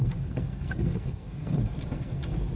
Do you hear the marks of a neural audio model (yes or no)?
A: yes